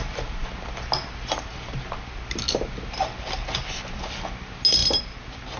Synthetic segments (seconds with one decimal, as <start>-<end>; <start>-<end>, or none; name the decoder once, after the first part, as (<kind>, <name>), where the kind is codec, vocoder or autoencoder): none